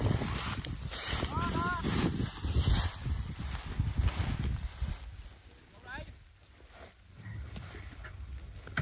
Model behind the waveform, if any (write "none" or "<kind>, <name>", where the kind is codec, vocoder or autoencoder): none